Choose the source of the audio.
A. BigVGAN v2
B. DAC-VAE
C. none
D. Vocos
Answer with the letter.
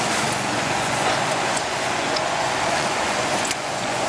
D